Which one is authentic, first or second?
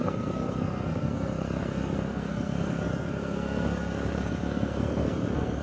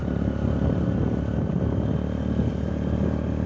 second